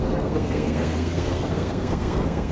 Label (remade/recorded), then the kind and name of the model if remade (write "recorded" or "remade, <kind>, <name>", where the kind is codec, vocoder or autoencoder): remade, codec, SNAC